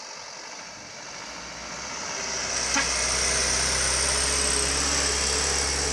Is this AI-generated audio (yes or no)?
no